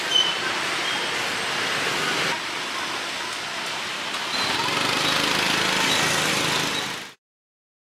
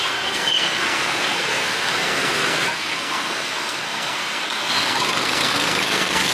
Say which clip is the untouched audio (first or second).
first